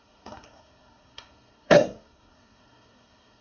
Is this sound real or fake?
fake